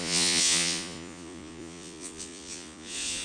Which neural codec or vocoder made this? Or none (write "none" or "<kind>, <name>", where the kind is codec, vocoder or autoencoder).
vocoder, Vocos